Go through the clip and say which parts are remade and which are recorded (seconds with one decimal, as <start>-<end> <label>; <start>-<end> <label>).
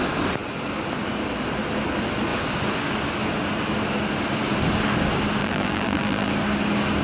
0.0-5.4 recorded; 5.4-6.3 remade; 6.3-7.0 recorded